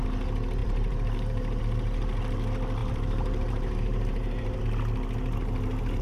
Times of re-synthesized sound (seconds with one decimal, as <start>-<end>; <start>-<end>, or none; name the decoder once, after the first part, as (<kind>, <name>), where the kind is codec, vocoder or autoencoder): 0.6-1.6 (vocoder, BigVGAN v2); 2.8-4.6